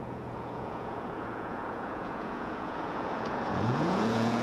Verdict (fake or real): fake